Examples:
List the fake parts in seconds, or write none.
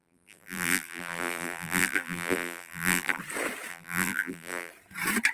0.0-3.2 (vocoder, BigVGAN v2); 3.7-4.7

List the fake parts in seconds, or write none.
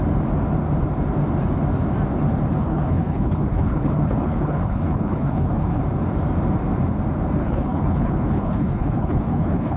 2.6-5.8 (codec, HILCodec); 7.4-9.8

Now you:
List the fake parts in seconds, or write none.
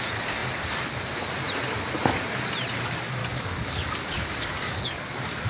3.2-5.5 (codec, DAC)